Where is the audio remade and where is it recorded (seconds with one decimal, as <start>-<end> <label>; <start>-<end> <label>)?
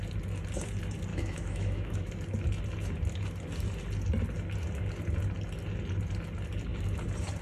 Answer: 0.0-1.1 recorded; 1.1-2.1 remade; 2.1-7.4 recorded